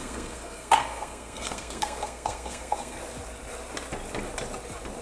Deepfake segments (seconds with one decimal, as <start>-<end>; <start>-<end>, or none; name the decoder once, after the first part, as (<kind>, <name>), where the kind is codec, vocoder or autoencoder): 0.0-3.0 (codec, SNAC)

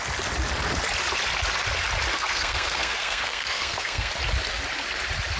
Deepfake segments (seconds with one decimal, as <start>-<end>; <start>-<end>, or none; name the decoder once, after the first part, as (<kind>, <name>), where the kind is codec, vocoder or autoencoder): 2.1-4.1 (codec, SNAC)

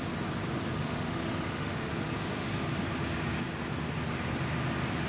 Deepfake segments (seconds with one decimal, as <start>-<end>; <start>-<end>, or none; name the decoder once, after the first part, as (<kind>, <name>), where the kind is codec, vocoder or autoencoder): 0.8-1.9 (autoencoder, DAC-VAE)

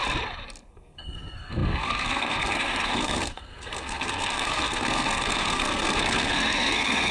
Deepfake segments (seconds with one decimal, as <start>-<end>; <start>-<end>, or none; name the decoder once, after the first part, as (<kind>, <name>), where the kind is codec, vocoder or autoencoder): 0.7-7.1 (codec, SNAC)

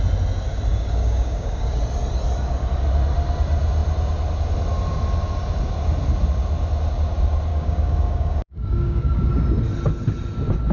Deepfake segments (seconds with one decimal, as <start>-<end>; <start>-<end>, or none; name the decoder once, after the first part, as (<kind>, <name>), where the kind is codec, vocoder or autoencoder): 0.7-1.8 (codec, DAC); 7.5-9.3